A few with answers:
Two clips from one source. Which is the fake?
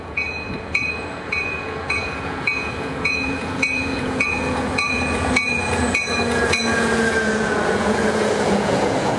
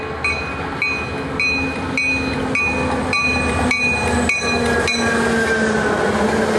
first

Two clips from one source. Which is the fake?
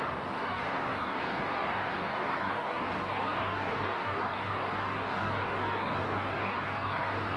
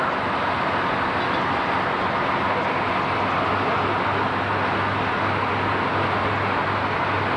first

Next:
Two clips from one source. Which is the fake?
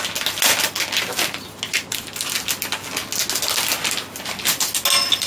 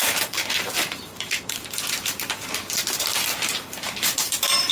second